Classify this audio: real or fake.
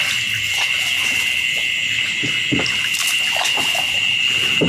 real